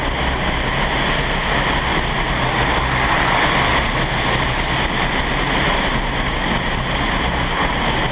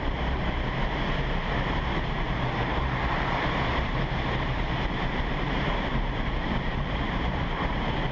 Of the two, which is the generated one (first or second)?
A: second